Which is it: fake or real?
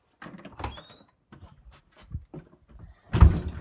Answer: real